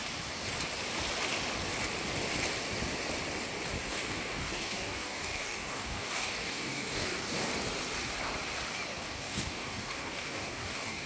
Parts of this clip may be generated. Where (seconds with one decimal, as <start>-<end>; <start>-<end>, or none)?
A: 3.9-7.5; 9.0-11.1